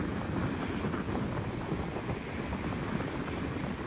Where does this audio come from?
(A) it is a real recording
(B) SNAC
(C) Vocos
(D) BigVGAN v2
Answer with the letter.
A